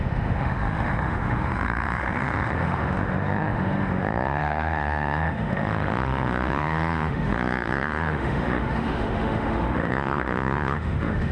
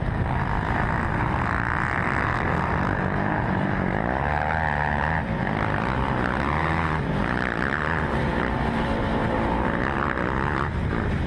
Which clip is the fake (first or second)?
first